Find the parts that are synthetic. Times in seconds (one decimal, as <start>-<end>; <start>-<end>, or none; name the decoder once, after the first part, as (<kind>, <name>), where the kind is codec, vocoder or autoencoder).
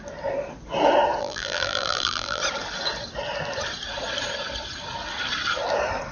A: 1.2-2.4 (vocoder, BigVGAN v2)